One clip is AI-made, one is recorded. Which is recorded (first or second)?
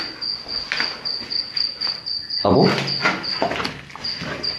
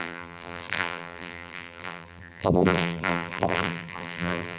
first